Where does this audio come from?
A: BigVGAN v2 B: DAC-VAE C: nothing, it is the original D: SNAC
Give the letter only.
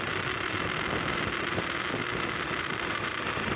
C